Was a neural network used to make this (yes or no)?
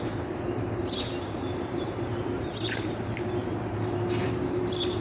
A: yes